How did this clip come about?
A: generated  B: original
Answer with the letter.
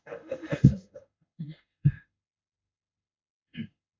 A